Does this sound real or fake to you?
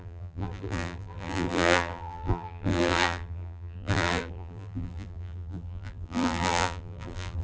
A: fake